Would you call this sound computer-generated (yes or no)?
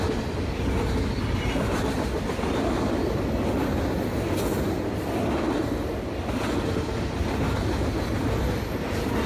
no